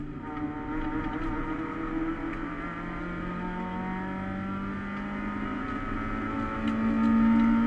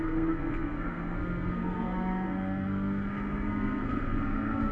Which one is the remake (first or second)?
second